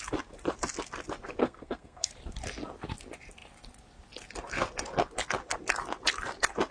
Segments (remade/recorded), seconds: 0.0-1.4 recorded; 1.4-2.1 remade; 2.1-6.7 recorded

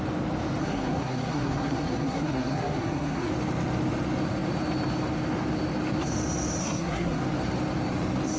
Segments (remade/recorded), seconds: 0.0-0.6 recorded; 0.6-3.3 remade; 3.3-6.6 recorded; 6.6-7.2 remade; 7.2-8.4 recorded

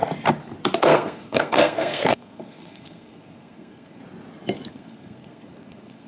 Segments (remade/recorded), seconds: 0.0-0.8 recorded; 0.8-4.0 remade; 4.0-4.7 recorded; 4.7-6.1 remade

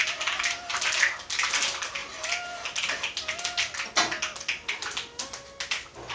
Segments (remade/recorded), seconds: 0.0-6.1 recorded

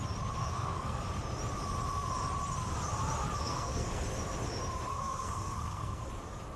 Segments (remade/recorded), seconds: 0.0-0.4 recorded; 0.4-1.0 remade; 1.0-3.4 recorded; 3.4-4.0 remade; 4.0-4.9 recorded; 4.9-6.1 remade; 6.1-6.6 recorded

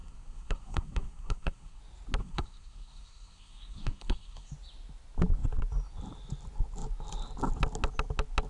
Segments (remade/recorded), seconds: 0.0-1.8 remade; 1.8-2.2 recorded; 2.2-4.5 remade; 4.5-8.5 recorded